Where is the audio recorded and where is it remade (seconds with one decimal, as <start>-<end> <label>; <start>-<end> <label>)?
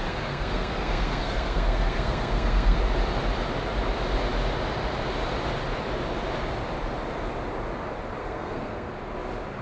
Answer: 0.0-2.8 remade; 2.8-8.2 recorded; 8.2-8.9 remade; 8.9-9.6 recorded